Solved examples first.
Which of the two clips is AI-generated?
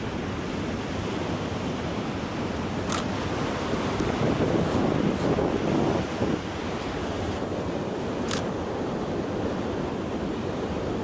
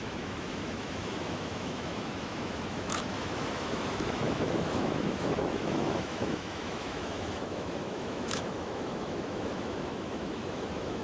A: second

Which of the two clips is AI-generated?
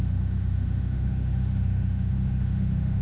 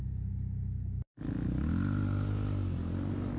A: first